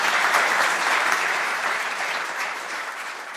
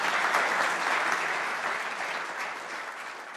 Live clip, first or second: second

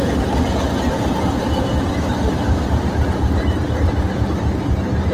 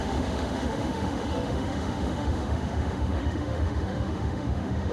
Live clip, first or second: first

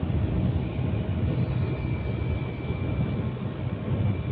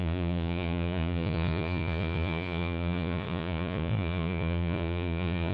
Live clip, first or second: first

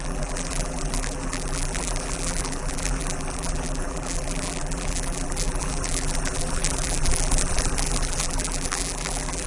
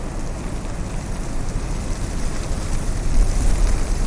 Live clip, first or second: second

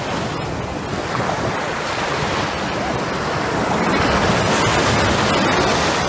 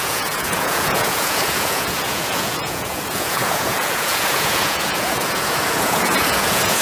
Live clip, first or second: first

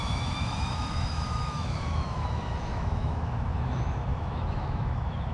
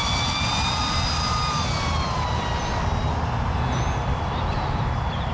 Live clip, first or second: second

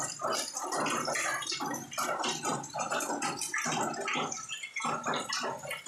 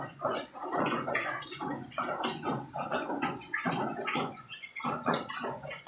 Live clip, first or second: first